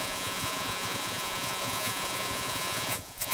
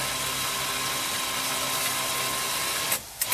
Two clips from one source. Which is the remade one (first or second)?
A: first